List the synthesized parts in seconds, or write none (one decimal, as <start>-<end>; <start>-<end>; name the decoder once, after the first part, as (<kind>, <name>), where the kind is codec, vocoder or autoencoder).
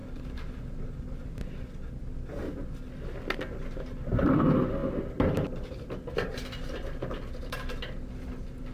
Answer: none